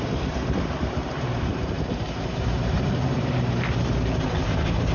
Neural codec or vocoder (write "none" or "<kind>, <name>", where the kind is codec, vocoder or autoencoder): vocoder, BigVGAN v2